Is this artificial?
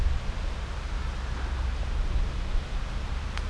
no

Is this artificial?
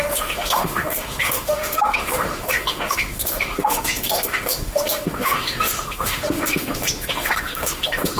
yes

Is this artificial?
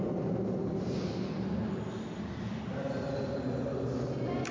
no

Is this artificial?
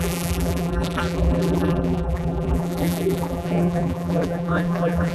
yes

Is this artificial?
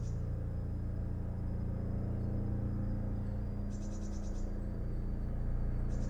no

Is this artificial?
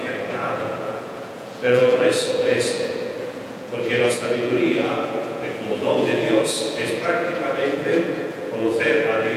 yes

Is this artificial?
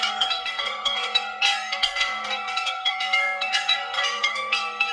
yes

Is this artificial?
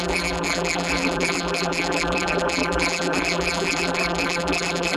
yes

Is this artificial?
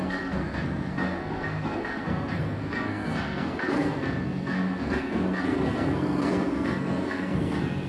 yes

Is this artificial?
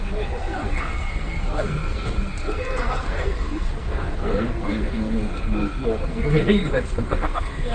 yes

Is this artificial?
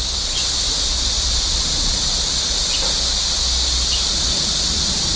no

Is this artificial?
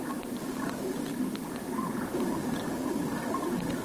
no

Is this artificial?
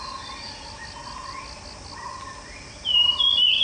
no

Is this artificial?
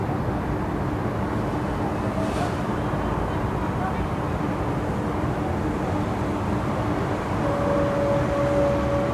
no